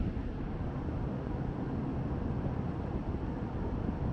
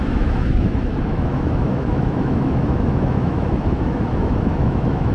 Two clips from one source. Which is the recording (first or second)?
first